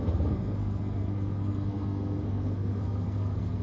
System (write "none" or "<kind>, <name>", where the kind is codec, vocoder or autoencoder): codec, SNAC